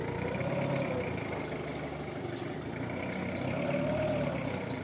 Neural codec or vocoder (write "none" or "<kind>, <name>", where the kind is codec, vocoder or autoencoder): none